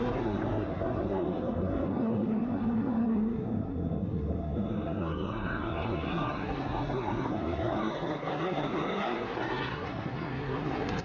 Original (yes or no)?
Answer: no